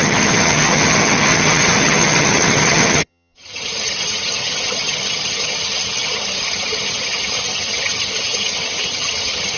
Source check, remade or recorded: remade